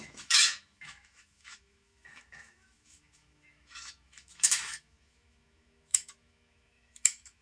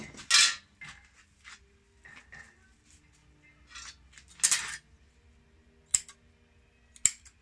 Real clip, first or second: second